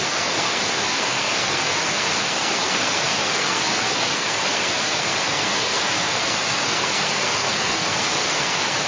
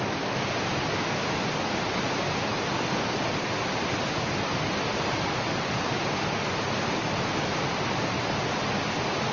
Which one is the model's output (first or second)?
first